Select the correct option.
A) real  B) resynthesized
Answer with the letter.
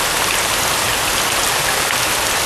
A